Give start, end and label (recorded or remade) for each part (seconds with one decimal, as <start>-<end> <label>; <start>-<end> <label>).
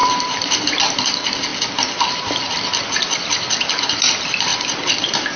0.0-0.6 remade; 0.6-5.4 recorded